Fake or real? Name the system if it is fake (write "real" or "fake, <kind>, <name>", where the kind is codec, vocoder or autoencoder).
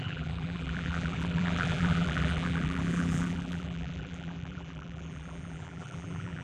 fake, vocoder, BigVGAN v2